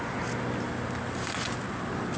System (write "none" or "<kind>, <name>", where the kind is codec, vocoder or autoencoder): none